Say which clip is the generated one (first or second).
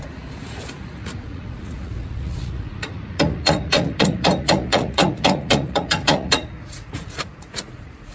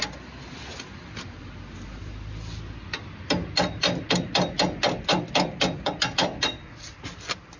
first